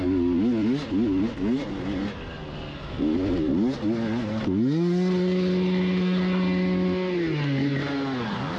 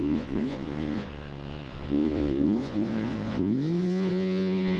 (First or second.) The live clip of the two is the first